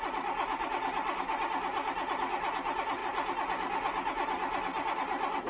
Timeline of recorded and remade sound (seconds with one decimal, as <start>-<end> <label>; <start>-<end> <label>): 0.0-5.5 recorded